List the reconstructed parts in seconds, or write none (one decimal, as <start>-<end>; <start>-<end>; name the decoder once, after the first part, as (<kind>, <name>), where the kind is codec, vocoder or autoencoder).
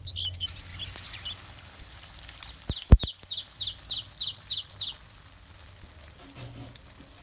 none